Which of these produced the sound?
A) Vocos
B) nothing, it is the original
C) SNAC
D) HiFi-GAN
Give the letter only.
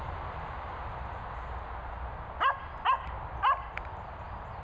B